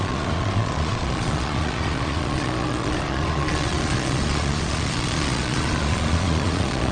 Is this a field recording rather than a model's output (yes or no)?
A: no